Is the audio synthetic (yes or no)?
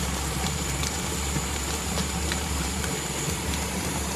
yes